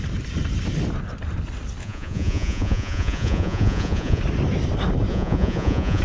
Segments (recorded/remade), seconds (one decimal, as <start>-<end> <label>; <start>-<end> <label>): 0.0-1.8 recorded; 1.8-4.2 remade; 4.2-5.1 recorded; 5.1-6.0 remade